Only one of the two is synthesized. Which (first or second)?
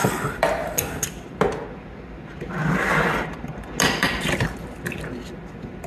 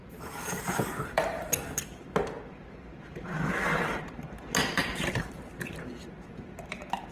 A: second